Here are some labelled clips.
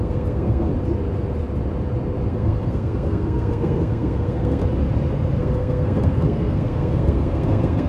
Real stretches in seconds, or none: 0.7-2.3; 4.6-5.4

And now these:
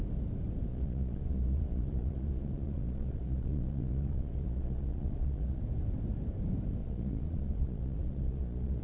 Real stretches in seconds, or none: 0.0-0.7; 5.6-6.8

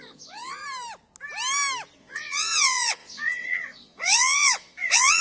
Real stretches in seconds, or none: 0.6-2.0

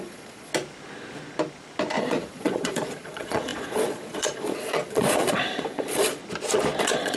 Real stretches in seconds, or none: 0.5-2.0; 6.2-6.8

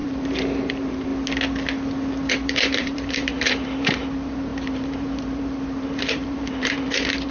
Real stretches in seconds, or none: 1.1-2.3

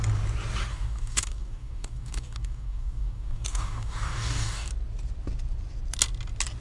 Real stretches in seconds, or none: 0.0-0.7; 4.7-6.6